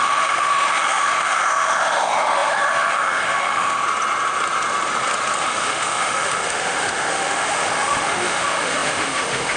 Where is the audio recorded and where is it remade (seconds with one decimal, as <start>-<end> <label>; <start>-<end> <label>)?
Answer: 0.0-3.8 remade; 3.8-5.4 recorded; 5.4-9.6 remade